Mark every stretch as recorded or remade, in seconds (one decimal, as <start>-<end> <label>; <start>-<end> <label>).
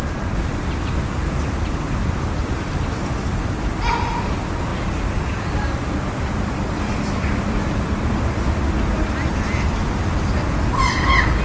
0.0-0.5 remade; 0.5-3.1 recorded; 3.1-11.4 remade